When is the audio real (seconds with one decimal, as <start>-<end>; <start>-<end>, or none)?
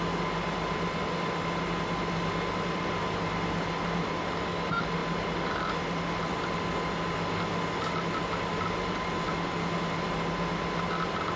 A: 0.0-11.4